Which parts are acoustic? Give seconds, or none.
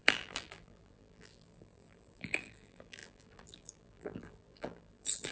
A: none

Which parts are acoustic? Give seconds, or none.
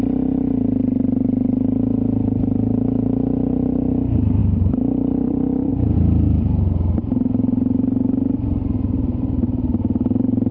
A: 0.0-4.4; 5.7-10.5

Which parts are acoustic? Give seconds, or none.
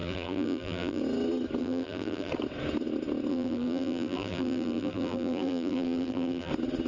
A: 1.0-1.6; 2.3-3.3; 6.5-6.9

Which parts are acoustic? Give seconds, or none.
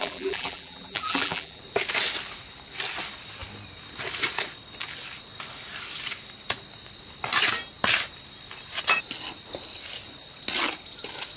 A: 1.6-11.4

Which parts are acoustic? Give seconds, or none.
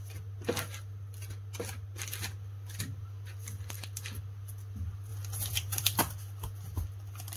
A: 0.0-5.1; 6.0-7.4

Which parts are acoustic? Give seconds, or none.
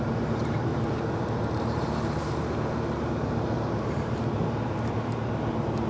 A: 5.2-5.9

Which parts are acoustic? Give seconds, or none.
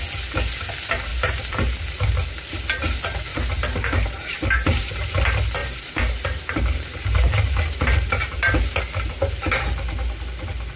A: 0.0-1.1; 1.8-3.3; 4.9-5.6; 8.8-10.8